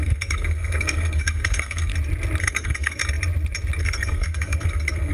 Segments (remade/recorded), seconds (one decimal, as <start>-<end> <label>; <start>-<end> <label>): 0.0-1.9 remade; 1.9-2.4 recorded; 2.4-3.0 remade; 3.0-3.8 recorded; 3.8-5.1 remade